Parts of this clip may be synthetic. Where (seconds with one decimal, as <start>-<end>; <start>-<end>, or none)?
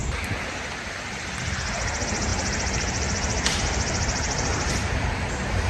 2.3-5.1